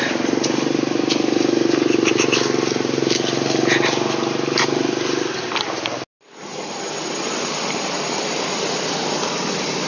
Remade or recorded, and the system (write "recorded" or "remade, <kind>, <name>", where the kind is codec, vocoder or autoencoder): recorded